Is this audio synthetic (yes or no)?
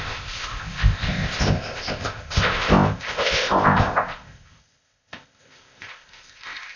yes